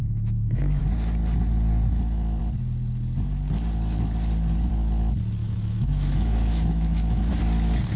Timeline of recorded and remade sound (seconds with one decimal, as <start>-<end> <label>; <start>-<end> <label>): 0.0-0.8 remade; 0.8-5.4 recorded; 5.4-7.4 remade; 7.4-8.0 recorded